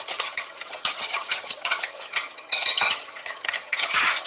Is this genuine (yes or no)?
no